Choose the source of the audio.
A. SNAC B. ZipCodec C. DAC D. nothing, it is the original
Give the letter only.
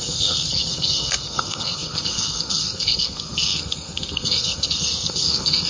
A